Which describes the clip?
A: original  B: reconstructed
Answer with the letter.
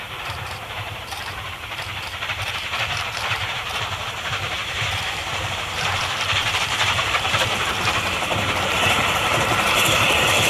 B